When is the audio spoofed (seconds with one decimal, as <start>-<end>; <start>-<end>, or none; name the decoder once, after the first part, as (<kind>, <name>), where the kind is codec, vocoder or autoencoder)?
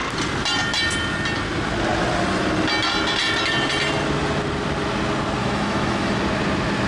5.4-6.2 (autoencoder, DAC-VAE)